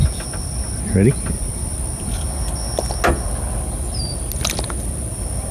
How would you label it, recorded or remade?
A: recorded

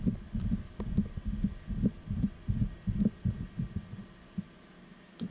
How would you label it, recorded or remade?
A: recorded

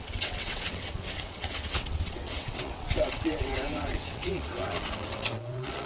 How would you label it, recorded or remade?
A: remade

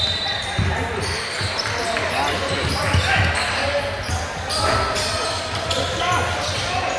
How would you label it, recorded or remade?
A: recorded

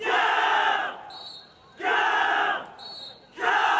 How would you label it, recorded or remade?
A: recorded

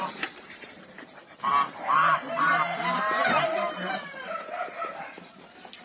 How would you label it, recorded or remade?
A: remade